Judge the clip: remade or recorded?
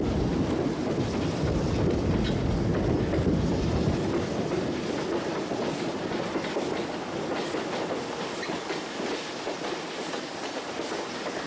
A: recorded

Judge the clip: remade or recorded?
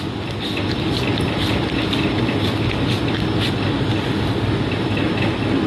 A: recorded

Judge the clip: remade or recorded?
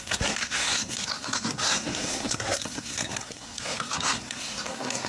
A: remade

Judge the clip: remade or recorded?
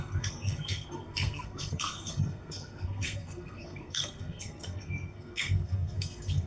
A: remade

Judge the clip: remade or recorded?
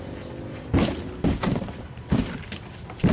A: recorded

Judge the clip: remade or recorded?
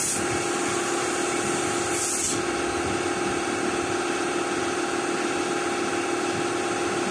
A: recorded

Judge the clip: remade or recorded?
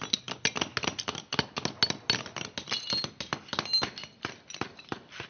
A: recorded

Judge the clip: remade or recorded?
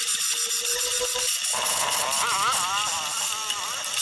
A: recorded